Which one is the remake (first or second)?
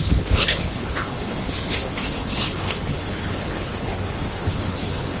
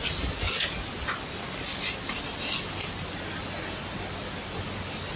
first